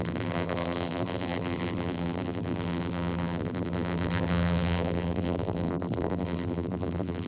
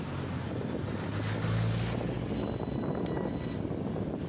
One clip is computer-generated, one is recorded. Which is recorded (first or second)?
second